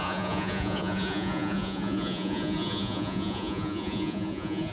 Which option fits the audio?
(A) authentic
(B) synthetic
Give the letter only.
B